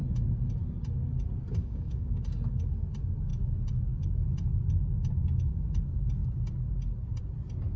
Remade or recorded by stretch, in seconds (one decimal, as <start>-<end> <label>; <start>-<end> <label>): 0.0-1.6 recorded; 1.6-2.2 remade; 2.2-7.8 recorded